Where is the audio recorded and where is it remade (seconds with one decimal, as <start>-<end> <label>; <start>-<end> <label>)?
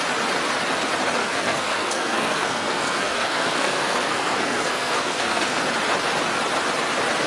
0.0-1.2 recorded; 1.2-5.6 remade; 5.6-7.3 recorded